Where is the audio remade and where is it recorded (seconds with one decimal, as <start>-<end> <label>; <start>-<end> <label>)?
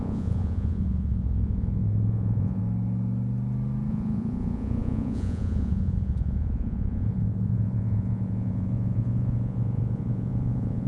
0.0-2.6 remade; 2.6-3.9 recorded; 3.9-10.9 remade